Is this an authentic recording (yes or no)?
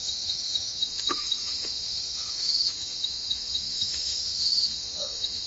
no